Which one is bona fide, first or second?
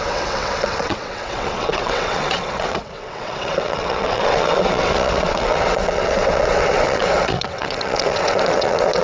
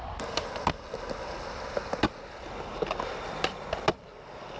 second